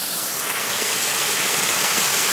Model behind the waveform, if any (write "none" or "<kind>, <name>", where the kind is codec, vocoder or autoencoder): codec, SNAC